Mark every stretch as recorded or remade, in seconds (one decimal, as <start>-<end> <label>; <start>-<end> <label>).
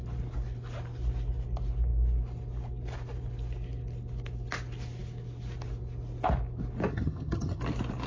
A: 0.0-6.9 recorded; 6.9-7.6 remade; 7.6-8.1 recorded